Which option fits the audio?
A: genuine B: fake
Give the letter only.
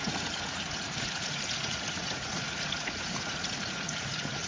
B